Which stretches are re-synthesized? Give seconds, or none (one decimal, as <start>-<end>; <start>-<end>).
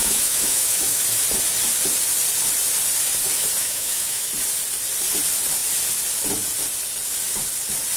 0.0-1.0; 3.6-4.3